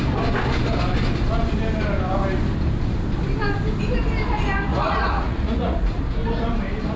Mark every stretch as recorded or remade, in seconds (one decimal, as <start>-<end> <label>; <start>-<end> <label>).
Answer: 0.0-4.7 recorded; 4.7-6.0 remade; 6.0-7.0 recorded

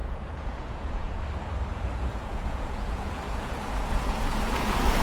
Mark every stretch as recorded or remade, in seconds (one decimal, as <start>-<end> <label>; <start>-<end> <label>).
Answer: 0.0-1.2 remade; 1.2-1.7 recorded; 1.7-5.0 remade

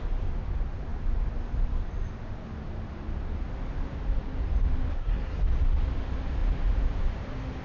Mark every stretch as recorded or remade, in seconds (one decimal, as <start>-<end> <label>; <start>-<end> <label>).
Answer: 0.0-4.9 recorded; 4.9-5.4 remade; 5.4-7.6 recorded